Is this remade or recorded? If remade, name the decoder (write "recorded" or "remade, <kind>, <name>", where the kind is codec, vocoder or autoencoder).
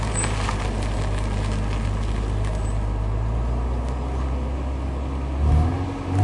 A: recorded